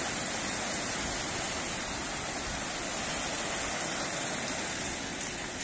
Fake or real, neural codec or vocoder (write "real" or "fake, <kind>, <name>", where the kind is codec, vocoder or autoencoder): real